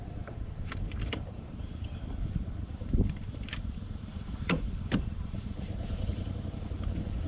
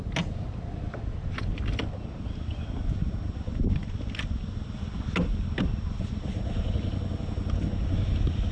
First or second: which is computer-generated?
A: first